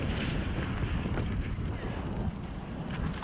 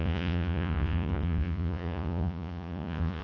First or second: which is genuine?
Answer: first